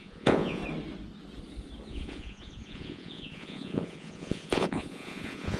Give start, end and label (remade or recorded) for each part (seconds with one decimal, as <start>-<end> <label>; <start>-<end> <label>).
0.0-0.6 remade; 0.6-1.9 recorded; 1.9-5.6 remade